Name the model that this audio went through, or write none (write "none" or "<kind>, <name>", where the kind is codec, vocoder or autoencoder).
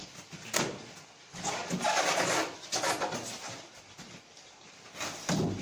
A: none